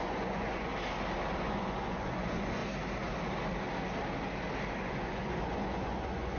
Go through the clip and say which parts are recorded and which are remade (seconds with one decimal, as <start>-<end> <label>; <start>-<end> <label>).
0.0-0.7 remade; 0.7-1.4 recorded; 1.4-2.6 remade; 2.6-4.8 recorded; 4.8-6.4 remade